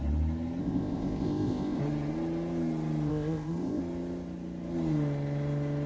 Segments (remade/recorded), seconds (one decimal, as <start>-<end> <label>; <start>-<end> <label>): 0.0-0.6 recorded; 0.6-1.8 remade; 1.8-3.1 recorded; 3.1-3.8 remade; 3.8-5.9 recorded